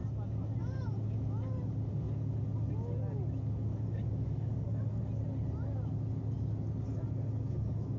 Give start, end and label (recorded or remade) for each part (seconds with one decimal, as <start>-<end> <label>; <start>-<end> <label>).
0.0-3.7 recorded; 3.7-5.0 remade; 5.0-8.0 recorded